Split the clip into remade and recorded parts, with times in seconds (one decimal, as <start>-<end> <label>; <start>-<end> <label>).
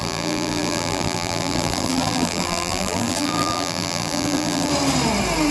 0.0-4.7 remade; 4.7-5.5 recorded